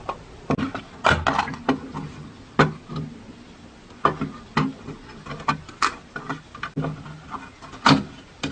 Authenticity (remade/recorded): recorded